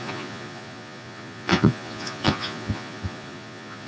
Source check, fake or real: fake